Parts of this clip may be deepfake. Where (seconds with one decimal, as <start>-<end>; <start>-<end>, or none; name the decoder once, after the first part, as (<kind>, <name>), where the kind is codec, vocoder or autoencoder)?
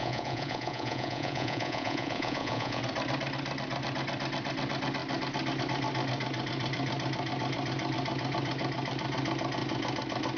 0.0-2.8 (vocoder, Vocos)